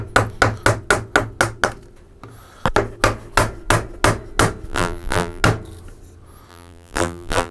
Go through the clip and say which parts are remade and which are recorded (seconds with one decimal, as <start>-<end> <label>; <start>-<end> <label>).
0.0-4.7 recorded; 4.7-5.4 remade; 5.4-6.5 recorded; 6.5-7.5 remade